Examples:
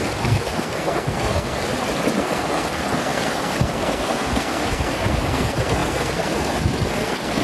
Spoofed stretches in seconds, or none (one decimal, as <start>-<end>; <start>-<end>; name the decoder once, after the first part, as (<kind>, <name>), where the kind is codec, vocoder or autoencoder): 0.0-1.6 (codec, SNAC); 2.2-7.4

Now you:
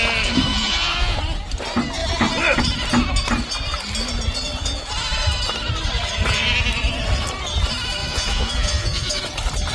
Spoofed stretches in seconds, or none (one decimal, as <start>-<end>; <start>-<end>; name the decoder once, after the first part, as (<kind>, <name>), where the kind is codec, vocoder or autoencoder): 0.5-1.2 (vocoder, Vocos); 8.0-9.2

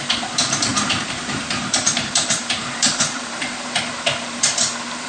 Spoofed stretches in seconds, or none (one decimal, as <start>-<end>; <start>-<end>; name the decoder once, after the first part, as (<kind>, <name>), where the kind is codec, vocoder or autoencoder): 0.7-3.8 (vocoder, BigVGAN v2)

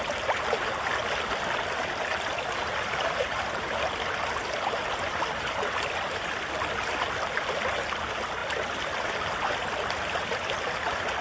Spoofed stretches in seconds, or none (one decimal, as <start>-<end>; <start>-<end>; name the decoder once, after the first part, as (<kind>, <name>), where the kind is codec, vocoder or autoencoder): none

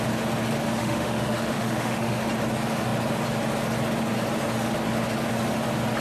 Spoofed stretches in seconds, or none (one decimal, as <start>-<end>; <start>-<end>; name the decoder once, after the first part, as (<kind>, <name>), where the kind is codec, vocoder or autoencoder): 0.8-2.2 (autoencoder, DAC-VAE)